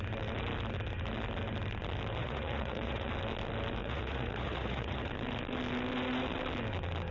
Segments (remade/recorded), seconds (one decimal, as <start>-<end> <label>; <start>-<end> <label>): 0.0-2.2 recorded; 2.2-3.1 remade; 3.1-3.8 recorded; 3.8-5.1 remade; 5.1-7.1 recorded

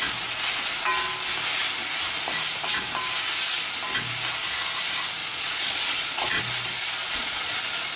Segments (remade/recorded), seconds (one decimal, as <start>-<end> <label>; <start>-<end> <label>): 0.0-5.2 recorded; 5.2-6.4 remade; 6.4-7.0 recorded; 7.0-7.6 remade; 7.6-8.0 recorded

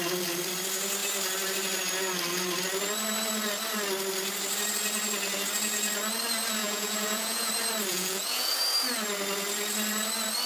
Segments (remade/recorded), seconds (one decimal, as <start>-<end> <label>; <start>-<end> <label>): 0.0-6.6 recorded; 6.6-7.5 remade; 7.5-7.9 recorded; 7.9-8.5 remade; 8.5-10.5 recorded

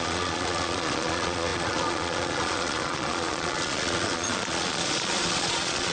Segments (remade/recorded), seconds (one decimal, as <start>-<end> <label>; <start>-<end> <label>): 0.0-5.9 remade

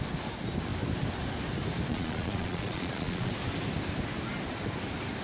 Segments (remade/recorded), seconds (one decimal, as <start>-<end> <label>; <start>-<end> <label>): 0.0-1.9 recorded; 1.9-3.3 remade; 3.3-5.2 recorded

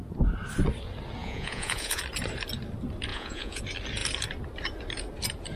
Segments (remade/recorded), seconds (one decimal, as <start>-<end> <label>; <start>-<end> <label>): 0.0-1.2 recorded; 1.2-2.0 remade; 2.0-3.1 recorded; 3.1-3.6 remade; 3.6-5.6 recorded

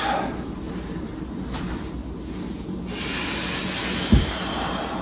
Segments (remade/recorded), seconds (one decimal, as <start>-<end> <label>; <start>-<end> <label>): 0.0-5.0 recorded